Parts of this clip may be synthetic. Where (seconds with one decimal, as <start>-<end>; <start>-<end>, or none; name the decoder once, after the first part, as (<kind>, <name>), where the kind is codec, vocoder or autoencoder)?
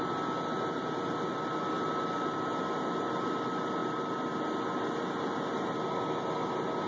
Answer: none